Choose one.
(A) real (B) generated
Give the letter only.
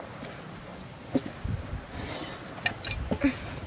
A